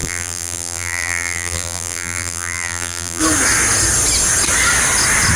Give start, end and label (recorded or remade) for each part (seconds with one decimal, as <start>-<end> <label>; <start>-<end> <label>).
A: 0.0-3.2 remade; 3.2-5.4 recorded